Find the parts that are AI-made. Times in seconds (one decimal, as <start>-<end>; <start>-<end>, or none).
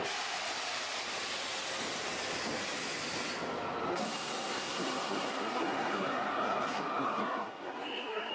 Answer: 3.9-8.3